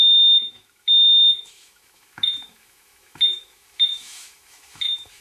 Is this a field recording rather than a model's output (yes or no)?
no